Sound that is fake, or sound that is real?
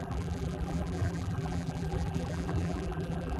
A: fake